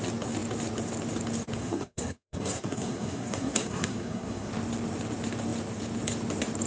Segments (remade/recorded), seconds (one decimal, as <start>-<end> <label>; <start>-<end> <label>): 0.0-1.6 recorded; 1.6-4.5 remade; 4.5-6.7 recorded